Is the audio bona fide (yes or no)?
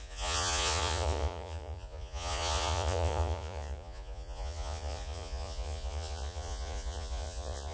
no